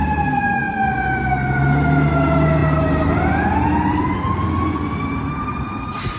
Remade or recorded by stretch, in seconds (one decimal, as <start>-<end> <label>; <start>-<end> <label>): 0.0-6.2 recorded

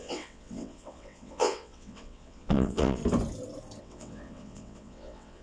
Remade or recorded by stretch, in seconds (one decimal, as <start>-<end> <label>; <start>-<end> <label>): 0.0-3.0 remade; 3.0-3.8 recorded; 3.8-5.4 remade